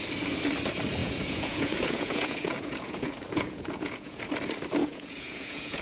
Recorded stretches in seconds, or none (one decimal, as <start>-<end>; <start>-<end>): 0.0-1.0; 4.2-4.8